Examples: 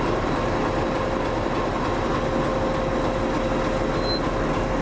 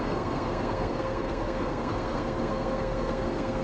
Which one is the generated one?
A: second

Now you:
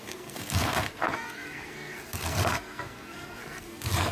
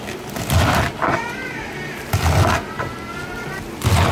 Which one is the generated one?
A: first